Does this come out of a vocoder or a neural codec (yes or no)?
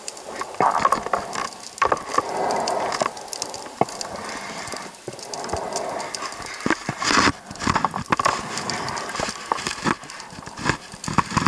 no